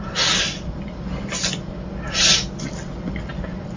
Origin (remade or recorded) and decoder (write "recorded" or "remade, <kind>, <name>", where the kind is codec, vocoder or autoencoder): recorded